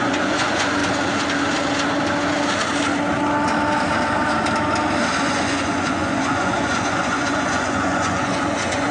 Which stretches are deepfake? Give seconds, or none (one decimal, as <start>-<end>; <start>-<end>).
0.0-0.8; 5.2-8.9